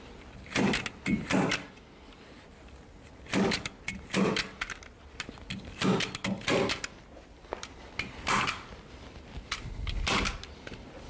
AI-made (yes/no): no